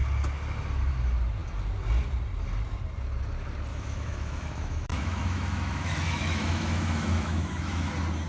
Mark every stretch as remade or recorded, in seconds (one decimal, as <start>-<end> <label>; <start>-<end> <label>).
0.0-3.7 recorded; 3.7-7.9 remade; 7.9-8.3 recorded